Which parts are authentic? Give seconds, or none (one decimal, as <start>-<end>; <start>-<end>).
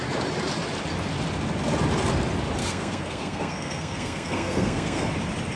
0.0-2.6; 5.1-5.6